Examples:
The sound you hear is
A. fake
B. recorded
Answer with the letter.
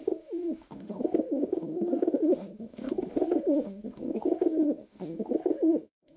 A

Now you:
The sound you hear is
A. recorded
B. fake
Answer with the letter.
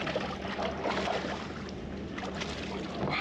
A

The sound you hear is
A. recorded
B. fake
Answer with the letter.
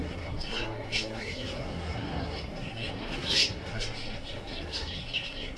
B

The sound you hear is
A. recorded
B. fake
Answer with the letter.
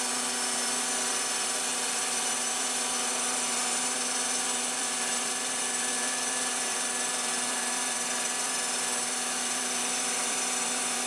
B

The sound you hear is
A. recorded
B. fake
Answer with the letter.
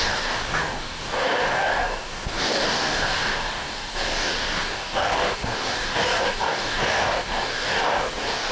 B